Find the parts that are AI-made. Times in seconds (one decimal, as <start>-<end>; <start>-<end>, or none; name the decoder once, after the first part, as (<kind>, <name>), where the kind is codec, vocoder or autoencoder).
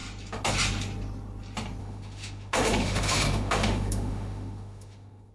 1.8-5.3 (autoencoder, DAC-VAE)